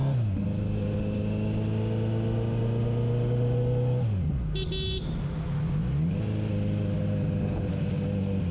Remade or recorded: recorded